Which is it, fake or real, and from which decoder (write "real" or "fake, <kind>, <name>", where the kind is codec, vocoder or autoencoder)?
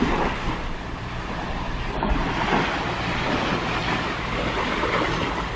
real